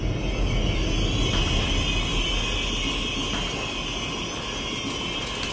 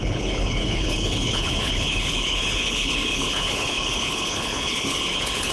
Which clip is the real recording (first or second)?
first